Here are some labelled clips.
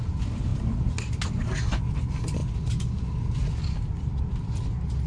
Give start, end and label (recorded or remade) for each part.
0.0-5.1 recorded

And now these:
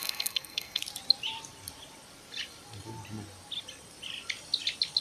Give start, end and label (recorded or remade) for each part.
0.0-0.8 remade; 0.8-5.0 recorded

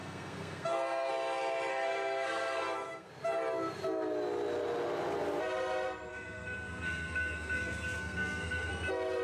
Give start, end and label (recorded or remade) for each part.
0.0-1.1 remade; 1.1-1.7 recorded; 1.7-3.1 remade; 3.1-6.1 recorded; 6.1-8.7 remade; 8.7-9.2 recorded